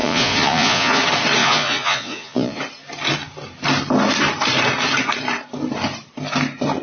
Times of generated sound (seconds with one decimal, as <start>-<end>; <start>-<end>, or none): 0.0-1.0; 1.4-2.6